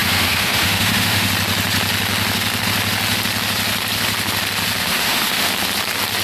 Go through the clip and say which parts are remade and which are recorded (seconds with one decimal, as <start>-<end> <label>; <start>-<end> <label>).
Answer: 0.0-1.3 remade; 1.3-4.8 recorded; 4.8-5.5 remade; 5.5-6.2 recorded